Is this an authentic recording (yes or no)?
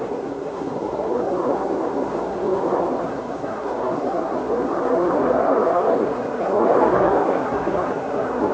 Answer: no